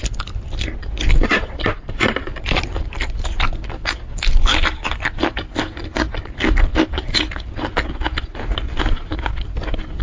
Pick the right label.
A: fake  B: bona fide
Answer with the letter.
B